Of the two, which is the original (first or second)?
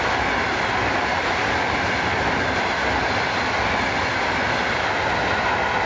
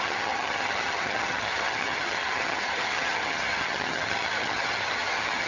first